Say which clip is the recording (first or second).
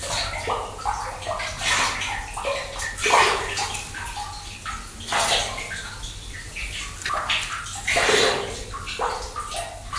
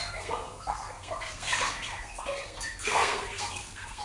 first